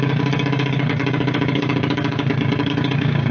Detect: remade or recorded remade